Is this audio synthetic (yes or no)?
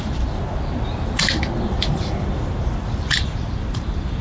no